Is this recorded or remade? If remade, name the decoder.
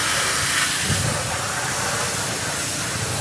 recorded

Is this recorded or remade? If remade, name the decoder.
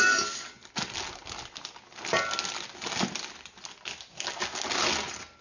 recorded